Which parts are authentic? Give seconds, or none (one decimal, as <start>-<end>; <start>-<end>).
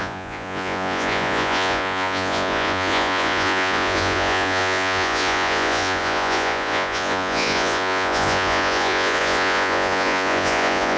none